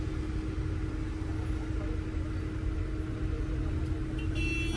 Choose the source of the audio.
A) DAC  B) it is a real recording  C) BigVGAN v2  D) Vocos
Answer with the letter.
B